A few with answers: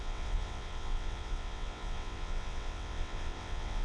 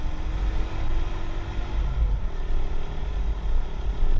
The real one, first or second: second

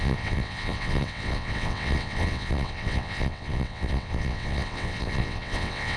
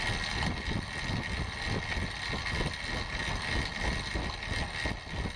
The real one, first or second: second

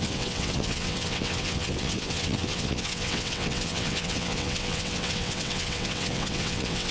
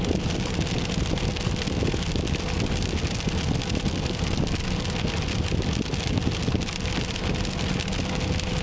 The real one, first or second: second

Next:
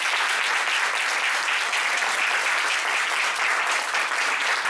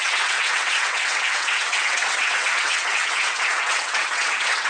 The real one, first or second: first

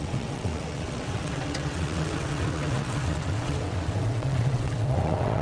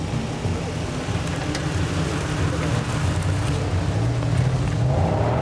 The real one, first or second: second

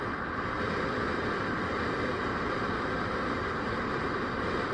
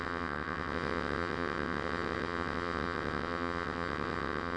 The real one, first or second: first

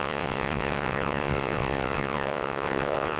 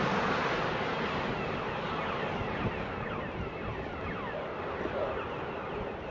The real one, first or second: second